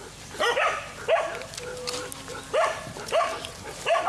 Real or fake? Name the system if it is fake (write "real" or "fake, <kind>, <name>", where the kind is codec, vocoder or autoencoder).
real